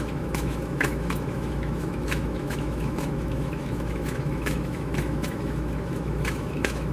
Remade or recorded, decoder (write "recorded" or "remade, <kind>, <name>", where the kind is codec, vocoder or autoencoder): remade, autoencoder, DAC-VAE